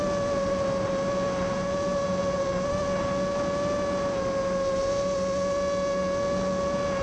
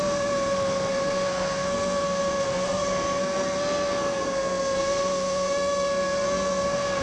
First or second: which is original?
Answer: first